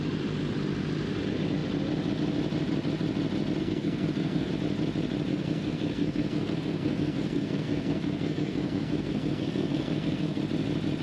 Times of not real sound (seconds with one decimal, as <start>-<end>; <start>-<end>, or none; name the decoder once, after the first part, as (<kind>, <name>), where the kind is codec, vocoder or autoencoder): 3.6-4.5 (codec, SNAC); 5.3-10.4